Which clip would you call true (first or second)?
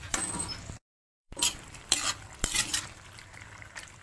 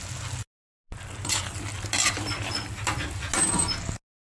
second